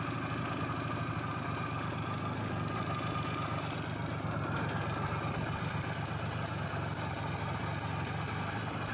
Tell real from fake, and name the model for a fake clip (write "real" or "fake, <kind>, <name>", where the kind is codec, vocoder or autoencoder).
real